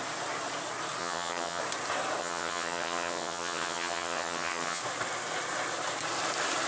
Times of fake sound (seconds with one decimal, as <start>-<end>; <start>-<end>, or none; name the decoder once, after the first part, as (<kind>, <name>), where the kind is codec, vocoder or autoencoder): 1.0-1.6 (vocoder, HiFi-GAN); 2.2-4.8